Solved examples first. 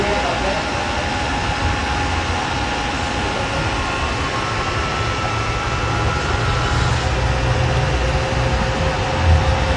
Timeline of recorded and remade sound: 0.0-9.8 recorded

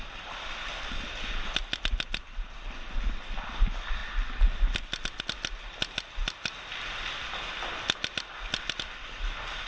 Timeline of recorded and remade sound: 0.0-9.7 recorded

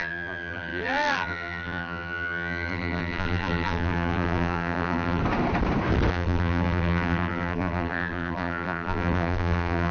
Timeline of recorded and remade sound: 0.0-5.2 remade; 5.2-6.1 recorded; 6.1-9.9 remade